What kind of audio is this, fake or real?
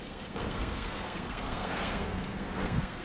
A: fake